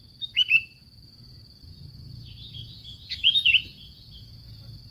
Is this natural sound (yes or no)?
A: no